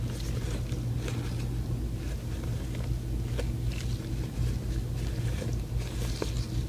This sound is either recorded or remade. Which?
recorded